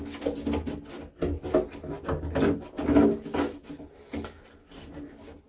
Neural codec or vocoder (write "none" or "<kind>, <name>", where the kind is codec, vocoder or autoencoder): none